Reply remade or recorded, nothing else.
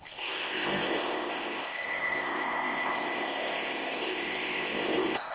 remade